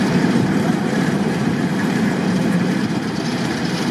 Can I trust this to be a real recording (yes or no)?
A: no